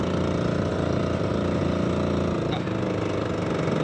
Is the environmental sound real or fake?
real